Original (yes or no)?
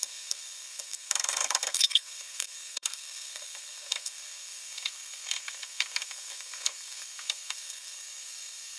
no